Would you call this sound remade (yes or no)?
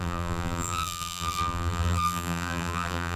yes